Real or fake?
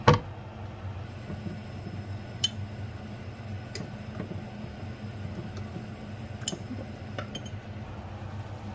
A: real